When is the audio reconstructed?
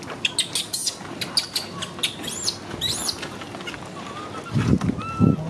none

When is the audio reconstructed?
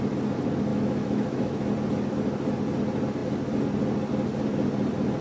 0.7-1.7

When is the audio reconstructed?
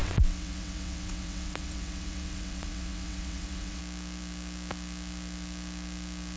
0.0-3.8